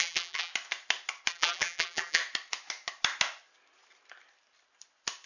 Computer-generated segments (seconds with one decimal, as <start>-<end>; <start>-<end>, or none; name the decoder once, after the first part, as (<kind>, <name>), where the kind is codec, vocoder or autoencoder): 0.0-0.5 (vocoder, BigVGAN v2); 1.3-2.2